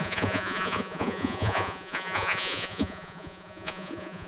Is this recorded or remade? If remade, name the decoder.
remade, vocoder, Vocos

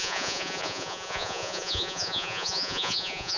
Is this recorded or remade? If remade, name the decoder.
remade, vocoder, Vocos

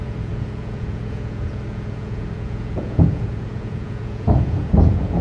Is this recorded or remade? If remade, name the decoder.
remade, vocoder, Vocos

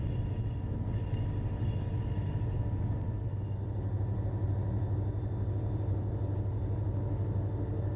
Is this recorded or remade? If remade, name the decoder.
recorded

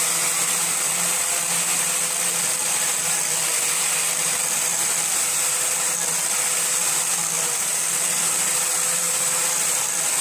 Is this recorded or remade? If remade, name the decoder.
recorded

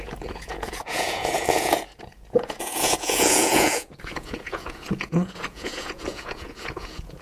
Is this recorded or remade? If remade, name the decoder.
remade, vocoder, Vocos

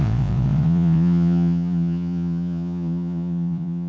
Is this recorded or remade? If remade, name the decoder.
remade, vocoder, Vocos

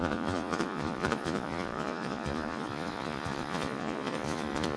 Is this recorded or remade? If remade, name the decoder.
remade, vocoder, Vocos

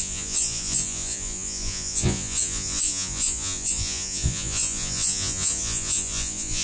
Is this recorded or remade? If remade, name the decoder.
remade, vocoder, Vocos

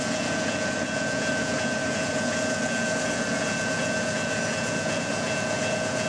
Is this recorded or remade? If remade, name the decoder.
remade, vocoder, Vocos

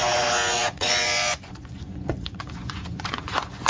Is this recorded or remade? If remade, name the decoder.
remade, vocoder, Vocos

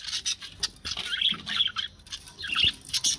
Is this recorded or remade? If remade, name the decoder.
recorded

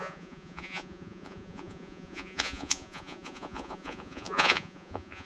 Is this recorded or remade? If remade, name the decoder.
remade, vocoder, Vocos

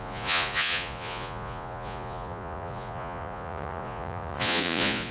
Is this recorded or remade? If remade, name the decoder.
remade, vocoder, Vocos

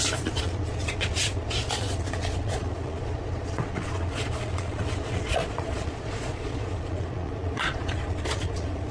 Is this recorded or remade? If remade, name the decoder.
remade, vocoder, Vocos